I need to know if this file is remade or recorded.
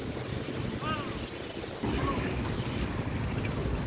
recorded